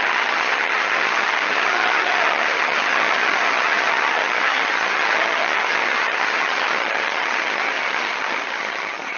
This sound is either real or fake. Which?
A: fake